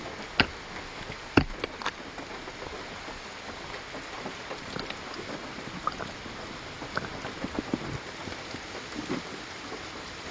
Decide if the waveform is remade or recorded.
recorded